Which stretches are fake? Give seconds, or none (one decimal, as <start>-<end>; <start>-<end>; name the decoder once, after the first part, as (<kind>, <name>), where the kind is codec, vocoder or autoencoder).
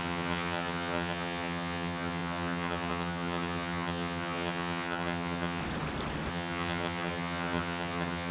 0.0-5.6 (vocoder, HiFi-GAN); 6.3-8.3